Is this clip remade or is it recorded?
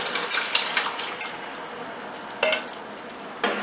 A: recorded